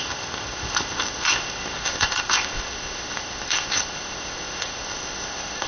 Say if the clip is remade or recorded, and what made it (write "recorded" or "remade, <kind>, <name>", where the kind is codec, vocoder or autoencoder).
remade, codec, ZipCodec